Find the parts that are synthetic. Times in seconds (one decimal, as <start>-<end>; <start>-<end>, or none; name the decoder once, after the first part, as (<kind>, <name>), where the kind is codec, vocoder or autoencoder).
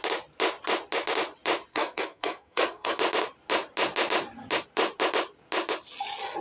1.7-3.0 (codec, SNAC)